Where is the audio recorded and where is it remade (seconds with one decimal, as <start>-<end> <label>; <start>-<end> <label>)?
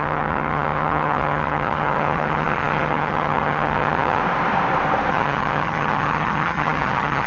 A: 0.0-4.2 remade; 4.2-5.1 recorded; 5.1-7.3 remade